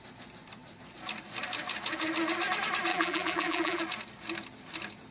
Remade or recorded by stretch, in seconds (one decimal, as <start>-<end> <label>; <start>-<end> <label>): 0.0-2.9 recorded; 2.9-3.8 remade; 3.8-5.1 recorded